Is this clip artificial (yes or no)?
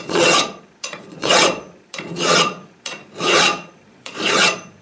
yes